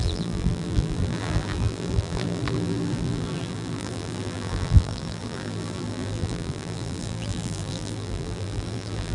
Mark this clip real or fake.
fake